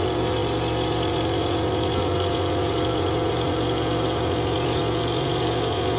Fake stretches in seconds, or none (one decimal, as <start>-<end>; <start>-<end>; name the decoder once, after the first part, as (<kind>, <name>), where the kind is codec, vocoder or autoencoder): none